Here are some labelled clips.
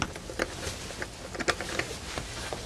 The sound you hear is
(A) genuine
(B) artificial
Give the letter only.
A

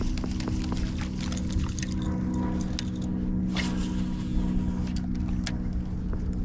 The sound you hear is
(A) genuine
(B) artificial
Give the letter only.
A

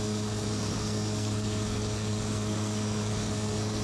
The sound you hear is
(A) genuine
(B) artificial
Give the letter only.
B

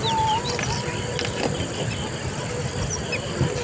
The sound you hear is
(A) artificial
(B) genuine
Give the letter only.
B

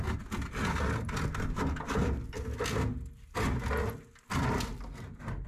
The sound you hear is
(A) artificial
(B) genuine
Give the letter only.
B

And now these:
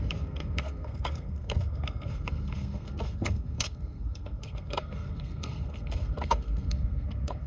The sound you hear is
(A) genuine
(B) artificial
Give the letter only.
B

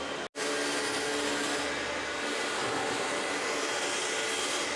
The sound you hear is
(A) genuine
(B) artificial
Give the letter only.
A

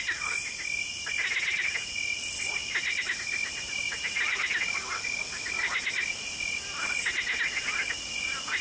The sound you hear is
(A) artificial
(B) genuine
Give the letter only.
B